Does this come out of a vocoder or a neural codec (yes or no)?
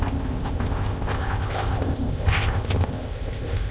yes